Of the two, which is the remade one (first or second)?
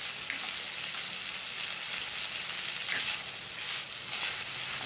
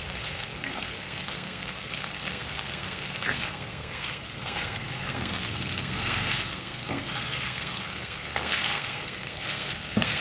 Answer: second